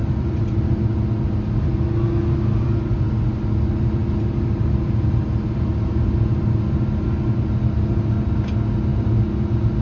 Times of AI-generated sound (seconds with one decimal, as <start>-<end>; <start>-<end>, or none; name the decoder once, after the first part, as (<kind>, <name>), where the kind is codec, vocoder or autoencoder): 0.0-0.8 (vocoder, BigVGAN v2)